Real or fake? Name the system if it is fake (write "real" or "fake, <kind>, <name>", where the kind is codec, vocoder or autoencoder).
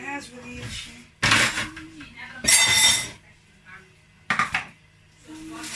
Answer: real